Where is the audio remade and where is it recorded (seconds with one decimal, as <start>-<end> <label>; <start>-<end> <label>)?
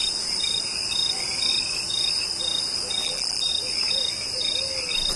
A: 0.0-3.0 recorded; 3.0-3.5 remade; 3.5-5.2 recorded